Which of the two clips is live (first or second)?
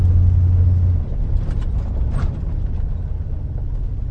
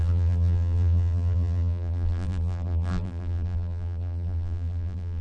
first